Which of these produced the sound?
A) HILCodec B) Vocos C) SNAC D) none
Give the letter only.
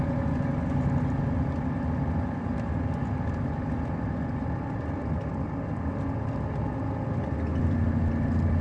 D